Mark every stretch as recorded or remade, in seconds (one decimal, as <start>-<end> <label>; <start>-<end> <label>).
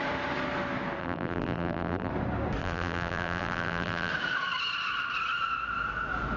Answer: 0.0-1.0 recorded; 1.0-2.1 remade; 2.1-2.6 recorded; 2.6-4.1 remade; 4.1-6.4 recorded